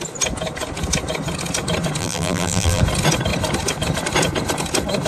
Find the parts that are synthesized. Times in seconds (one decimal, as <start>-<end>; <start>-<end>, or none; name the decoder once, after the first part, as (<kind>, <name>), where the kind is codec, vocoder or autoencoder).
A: 2.0-2.8 (vocoder, BigVGAN v2)